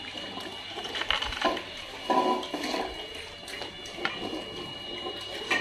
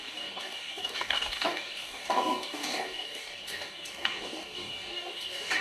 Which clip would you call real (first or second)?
first